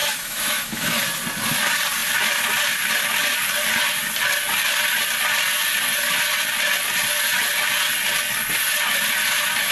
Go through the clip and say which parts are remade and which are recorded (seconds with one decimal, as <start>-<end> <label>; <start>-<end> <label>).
0.0-1.0 remade; 1.0-9.7 recorded